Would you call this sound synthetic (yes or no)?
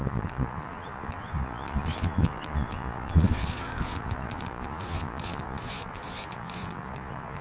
yes